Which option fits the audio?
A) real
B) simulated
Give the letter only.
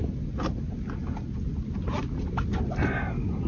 A